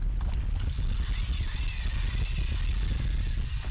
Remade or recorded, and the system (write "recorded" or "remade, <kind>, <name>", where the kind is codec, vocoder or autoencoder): recorded